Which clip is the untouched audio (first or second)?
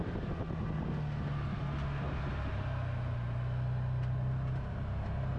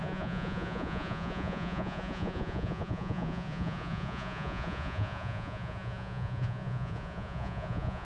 first